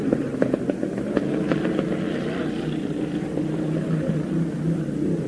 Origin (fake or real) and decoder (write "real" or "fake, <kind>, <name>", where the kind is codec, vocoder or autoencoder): real